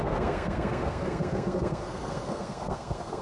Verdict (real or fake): fake